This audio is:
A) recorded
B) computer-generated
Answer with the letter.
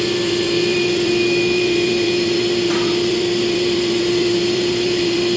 B